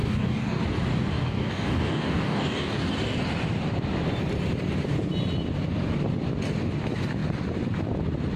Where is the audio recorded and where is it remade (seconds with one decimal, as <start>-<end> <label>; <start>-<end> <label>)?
0.0-0.6 remade; 0.6-1.1 recorded; 1.1-2.9 remade; 2.9-8.4 recorded